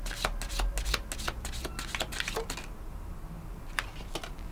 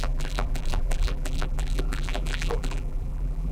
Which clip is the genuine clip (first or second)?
first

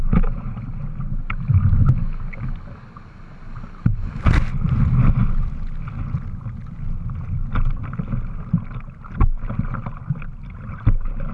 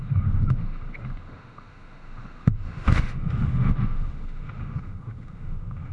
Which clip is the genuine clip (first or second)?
first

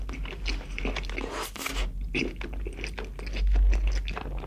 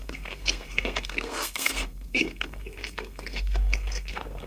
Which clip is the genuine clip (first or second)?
first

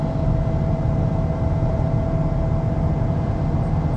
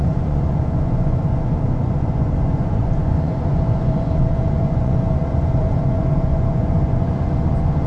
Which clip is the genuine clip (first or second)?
first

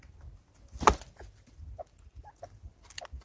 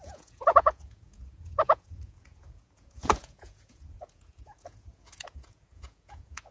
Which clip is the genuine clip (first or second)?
first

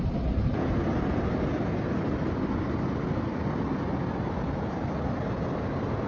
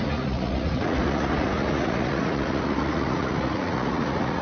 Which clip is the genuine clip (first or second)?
first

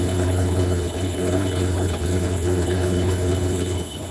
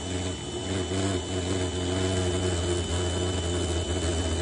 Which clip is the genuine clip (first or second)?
second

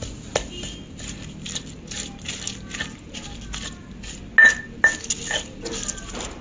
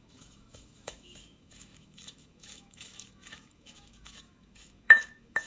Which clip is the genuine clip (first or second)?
first